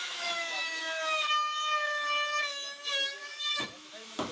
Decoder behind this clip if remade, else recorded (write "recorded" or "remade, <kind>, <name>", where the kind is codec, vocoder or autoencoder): remade, autoencoder, DAC-VAE